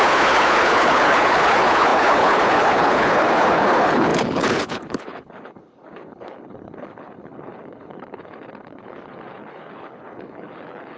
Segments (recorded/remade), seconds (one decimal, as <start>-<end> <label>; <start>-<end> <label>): 0.0-11.0 remade